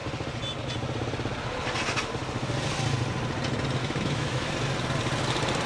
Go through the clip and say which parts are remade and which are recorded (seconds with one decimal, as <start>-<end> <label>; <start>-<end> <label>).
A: 0.0-3.8 recorded; 3.8-4.5 remade; 4.5-5.7 recorded